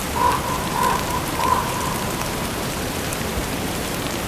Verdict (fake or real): fake